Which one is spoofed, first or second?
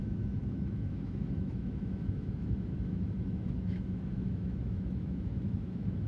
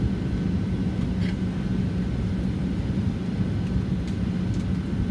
first